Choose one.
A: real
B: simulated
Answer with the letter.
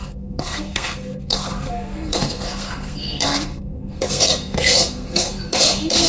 B